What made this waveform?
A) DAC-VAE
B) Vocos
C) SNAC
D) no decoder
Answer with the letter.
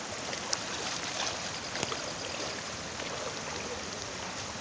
D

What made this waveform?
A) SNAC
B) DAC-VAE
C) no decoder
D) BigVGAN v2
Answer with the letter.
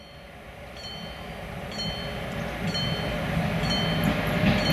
C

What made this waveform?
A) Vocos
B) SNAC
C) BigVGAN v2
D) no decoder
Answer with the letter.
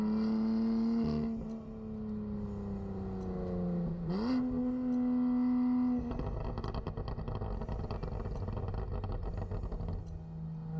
D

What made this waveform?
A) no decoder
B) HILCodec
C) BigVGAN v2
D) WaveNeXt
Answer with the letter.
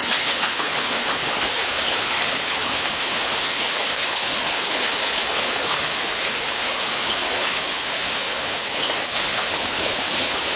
B